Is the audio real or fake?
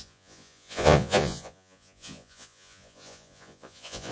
fake